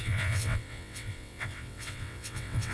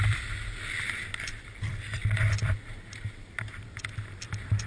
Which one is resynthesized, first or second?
first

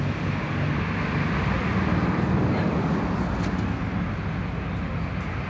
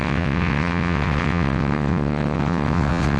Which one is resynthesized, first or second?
second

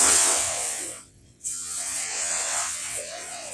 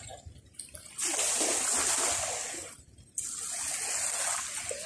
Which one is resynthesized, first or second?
first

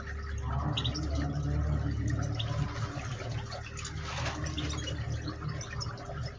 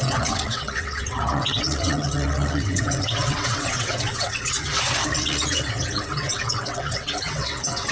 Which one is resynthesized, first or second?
second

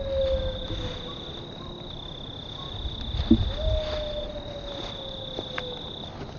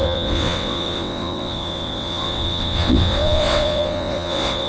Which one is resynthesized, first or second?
second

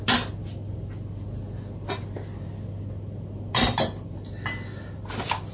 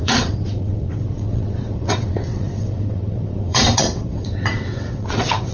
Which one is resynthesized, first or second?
second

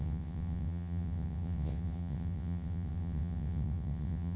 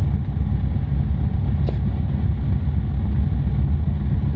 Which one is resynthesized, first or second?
first